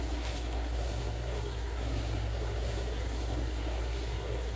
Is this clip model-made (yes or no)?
yes